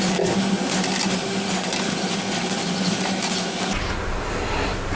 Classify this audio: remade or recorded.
recorded